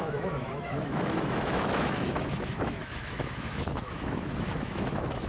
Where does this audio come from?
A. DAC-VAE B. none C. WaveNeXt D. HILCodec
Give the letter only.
A